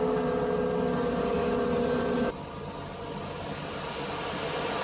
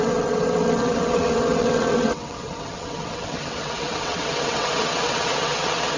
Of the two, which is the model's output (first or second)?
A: second